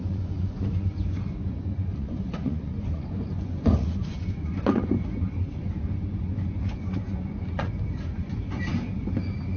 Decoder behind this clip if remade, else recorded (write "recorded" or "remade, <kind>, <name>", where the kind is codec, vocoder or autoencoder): remade, vocoder, Vocos